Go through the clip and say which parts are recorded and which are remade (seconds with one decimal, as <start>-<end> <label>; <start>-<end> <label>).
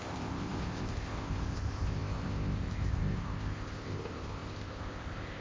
0.0-5.4 remade